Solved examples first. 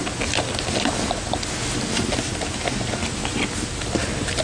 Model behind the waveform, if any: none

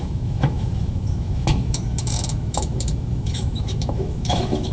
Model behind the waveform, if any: autoencoder, DAC-VAE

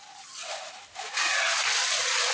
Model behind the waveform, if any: none